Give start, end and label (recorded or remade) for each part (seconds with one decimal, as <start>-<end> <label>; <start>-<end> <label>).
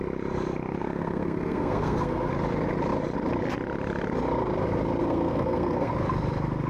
0.0-0.8 recorded; 0.8-2.3 remade; 2.3-5.0 recorded; 5.0-5.9 remade; 5.9-6.7 recorded